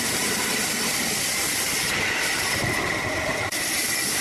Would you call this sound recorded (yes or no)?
no